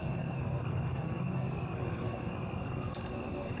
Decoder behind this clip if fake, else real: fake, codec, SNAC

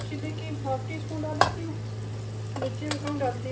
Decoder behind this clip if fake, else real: real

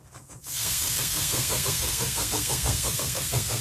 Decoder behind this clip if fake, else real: fake, codec, SNAC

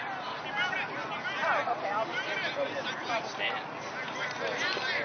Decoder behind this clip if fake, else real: real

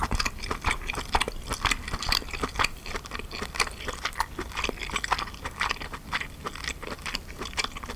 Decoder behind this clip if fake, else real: real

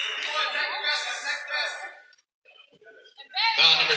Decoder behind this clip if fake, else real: real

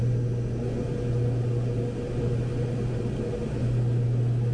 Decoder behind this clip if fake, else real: real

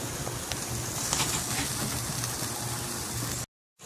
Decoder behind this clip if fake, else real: real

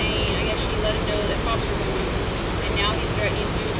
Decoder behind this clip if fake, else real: real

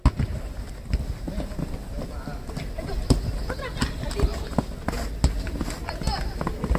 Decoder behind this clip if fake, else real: real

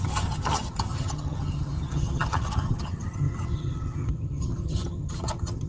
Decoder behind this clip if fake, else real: fake, vocoder, HiFi-GAN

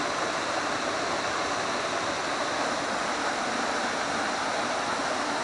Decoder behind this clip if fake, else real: real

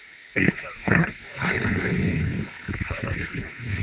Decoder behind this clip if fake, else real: fake, codec, HILCodec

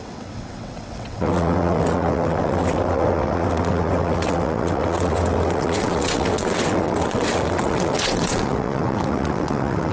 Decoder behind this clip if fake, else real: fake, vocoder, WaveNeXt